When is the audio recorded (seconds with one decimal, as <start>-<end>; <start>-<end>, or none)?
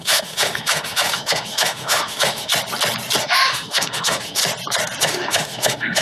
2.5-3.2; 4.4-5.0